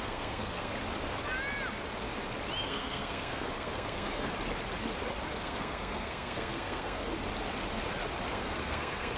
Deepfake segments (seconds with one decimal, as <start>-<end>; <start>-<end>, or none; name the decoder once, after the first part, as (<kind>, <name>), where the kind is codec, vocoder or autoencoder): 0.0-0.7 (codec, SNAC); 2.6-4.3; 5.3-7.1; 8.3-9.2